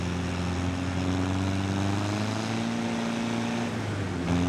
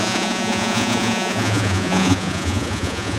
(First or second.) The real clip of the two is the first